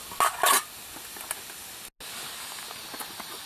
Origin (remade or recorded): recorded